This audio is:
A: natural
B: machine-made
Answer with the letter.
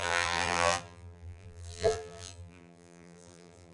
B